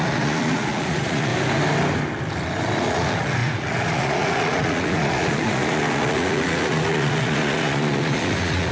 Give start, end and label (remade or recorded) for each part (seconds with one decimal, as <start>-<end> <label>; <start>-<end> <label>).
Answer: 0.0-1.3 remade; 1.3-2.8 recorded; 2.8-8.7 remade